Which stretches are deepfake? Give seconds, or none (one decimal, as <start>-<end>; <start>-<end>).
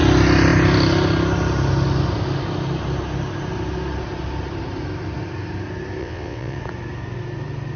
6.0-6.6